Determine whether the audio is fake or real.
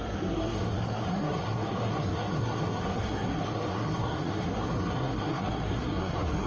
fake